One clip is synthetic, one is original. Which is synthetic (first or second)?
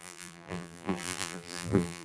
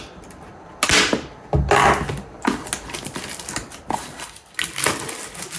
first